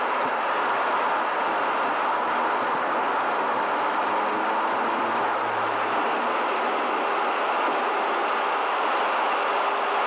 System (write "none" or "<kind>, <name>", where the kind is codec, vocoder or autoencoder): none